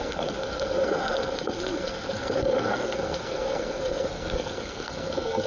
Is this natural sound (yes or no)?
no